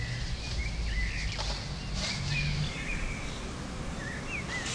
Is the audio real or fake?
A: real